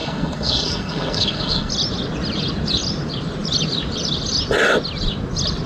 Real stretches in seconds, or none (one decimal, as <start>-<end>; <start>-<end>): 1.7-5.7

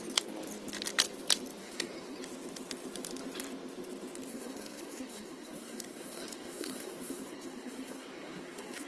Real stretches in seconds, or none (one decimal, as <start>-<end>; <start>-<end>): 0.0-1.6; 2.2-4.3

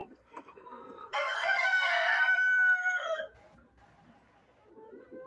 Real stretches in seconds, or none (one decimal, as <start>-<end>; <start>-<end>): 3.2-5.3

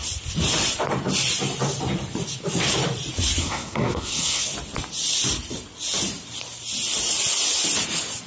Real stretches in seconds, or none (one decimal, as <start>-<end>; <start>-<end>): 0.0-3.4; 4.4-8.3

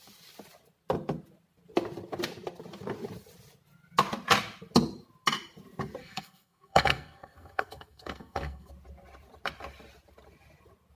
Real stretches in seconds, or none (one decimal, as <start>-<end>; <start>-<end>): 0.0-6.0; 8.7-11.0

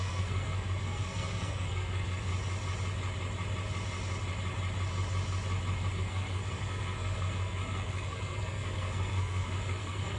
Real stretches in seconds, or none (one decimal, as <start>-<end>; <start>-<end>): 2.3-5.9